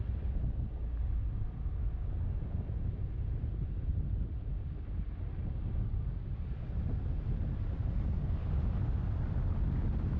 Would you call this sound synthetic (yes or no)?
no